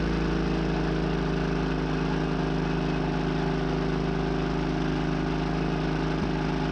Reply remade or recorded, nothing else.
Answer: recorded